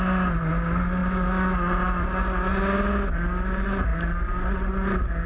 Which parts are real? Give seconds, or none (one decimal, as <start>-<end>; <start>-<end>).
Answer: 0.0-5.3